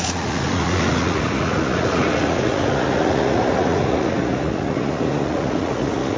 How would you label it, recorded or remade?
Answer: remade